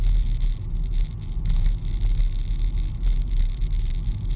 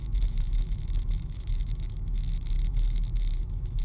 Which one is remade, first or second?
second